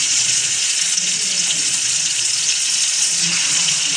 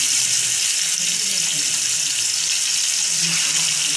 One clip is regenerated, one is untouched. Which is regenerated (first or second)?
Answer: first